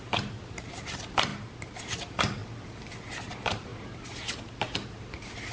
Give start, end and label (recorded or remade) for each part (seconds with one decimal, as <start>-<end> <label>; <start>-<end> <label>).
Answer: 0.0-1.3 remade; 1.3-1.8 recorded; 1.8-2.4 remade; 2.4-3.2 recorded; 3.2-3.7 remade; 3.7-4.9 recorded; 4.9-5.5 remade